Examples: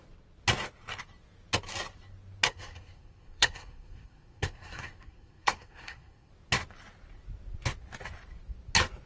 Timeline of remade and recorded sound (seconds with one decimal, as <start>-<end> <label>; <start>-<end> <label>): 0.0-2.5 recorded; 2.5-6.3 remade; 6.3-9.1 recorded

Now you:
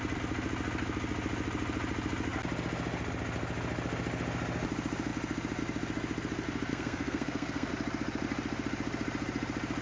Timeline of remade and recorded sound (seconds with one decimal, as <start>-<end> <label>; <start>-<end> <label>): 0.0-6.7 recorded; 6.7-7.7 remade; 7.7-9.8 recorded

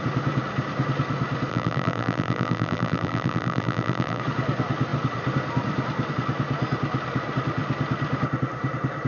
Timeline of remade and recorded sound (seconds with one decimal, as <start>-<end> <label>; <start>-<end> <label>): 0.0-1.5 recorded; 1.5-4.2 remade; 4.2-9.1 recorded